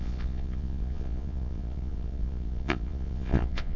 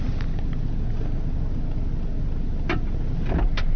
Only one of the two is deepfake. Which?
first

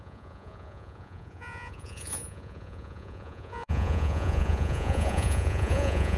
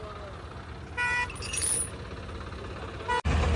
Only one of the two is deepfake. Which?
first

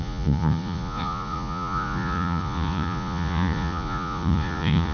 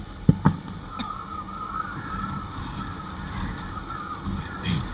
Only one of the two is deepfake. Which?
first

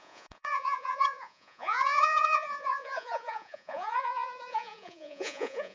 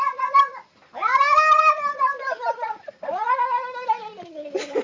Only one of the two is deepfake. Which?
first